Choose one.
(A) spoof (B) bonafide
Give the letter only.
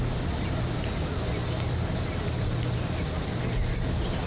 B